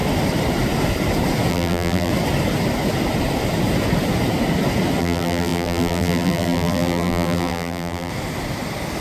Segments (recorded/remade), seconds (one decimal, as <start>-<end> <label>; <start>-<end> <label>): 0.0-1.5 recorded; 1.5-2.1 remade; 2.1-5.0 recorded; 5.0-8.1 remade; 8.1-9.0 recorded